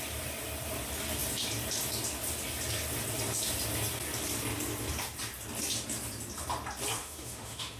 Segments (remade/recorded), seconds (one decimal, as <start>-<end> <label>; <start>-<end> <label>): 0.0-7.0 recorded; 7.0-7.8 remade